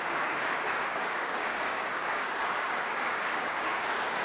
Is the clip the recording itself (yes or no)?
no